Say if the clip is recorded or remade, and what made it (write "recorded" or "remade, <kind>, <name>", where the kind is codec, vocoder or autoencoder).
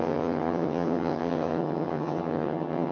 remade, vocoder, HiFi-GAN